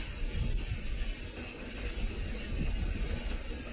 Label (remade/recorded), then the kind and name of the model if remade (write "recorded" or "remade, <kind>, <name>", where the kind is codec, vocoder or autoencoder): recorded